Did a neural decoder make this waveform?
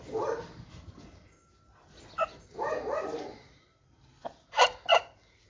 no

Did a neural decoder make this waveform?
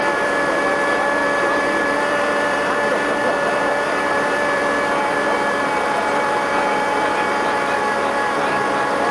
yes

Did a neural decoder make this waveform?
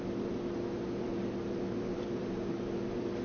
yes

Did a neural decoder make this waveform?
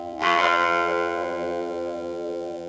yes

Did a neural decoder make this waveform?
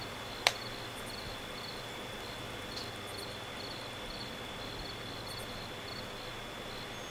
no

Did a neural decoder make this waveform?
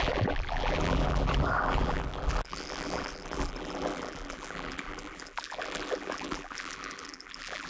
yes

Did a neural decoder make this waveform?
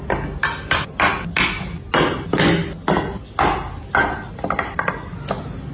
no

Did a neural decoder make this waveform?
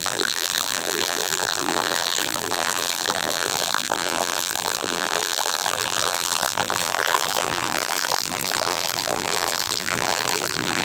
yes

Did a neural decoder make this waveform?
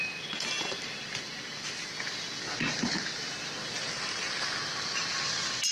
no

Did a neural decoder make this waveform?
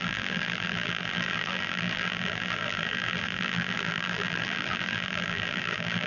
yes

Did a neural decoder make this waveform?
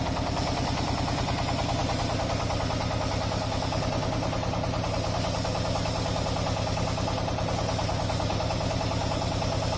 no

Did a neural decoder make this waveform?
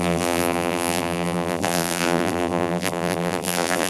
yes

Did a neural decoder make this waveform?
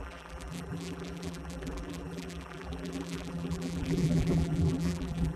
yes